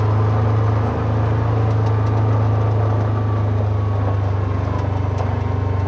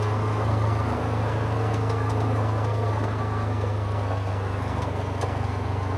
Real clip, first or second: first